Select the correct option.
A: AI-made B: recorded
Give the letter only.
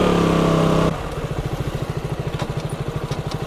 B